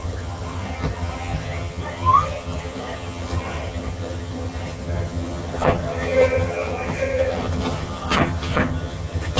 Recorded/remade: remade